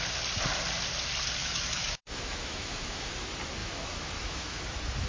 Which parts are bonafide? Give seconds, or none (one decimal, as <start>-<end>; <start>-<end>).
0.0-1.4; 3.1-3.6; 4.6-5.1